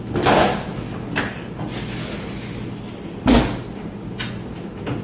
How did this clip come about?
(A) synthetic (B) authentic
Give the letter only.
A